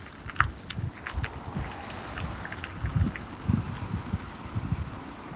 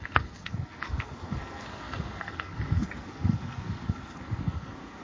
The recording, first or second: first